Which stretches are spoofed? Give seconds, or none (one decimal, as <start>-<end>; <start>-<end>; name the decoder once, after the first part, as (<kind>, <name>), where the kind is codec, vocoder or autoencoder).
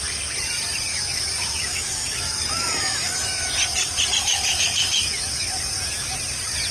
0.9-3.5 (autoencoder, DAC-VAE); 4.2-5.5